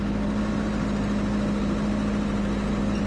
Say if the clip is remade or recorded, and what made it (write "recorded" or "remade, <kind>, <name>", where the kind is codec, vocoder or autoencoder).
recorded